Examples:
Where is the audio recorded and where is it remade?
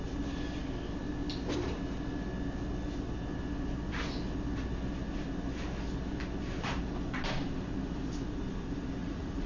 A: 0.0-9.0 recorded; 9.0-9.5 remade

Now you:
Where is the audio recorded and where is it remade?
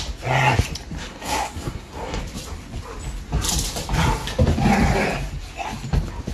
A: 0.0-1.0 recorded; 1.0-2.2 remade; 2.2-6.3 recorded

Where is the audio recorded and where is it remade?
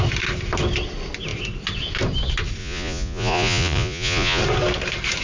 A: 0.0-2.6 recorded; 2.6-4.4 remade; 4.4-5.2 recorded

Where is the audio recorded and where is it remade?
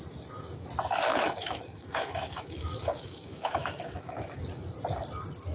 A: 0.0-1.1 recorded; 1.1-4.4 remade; 4.4-5.5 recorded